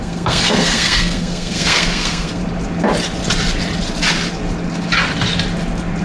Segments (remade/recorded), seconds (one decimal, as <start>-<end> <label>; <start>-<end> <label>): 0.0-2.4 remade; 2.4-6.0 recorded